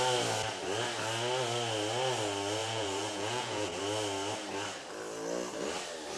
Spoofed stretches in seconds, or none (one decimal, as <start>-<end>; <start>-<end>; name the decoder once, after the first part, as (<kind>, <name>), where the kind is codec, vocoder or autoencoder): 2.6-3.8 (vocoder, Vocos)